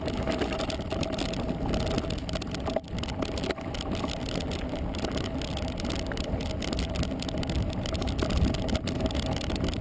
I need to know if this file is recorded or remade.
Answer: recorded